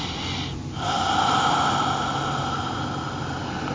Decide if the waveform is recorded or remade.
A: recorded